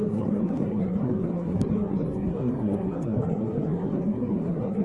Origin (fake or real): fake